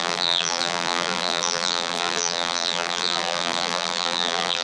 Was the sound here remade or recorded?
remade